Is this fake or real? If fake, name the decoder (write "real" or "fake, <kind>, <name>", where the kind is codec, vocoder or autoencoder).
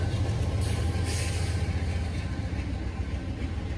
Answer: real